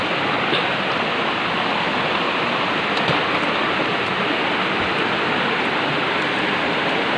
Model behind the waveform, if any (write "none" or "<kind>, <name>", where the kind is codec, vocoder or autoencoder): none